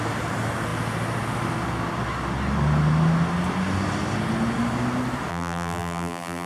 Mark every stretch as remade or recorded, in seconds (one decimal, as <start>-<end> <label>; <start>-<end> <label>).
0.0-5.3 recorded; 5.3-6.5 remade